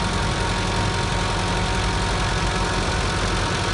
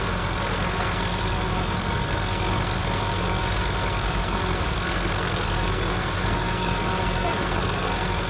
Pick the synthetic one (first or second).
second